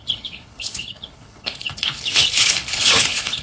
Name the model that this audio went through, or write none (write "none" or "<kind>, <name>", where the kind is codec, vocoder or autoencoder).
codec, HILCodec